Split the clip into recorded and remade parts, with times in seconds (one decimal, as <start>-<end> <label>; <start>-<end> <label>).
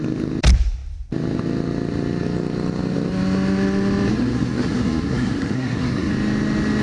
0.0-4.1 recorded; 4.1-6.1 remade; 6.1-6.8 recorded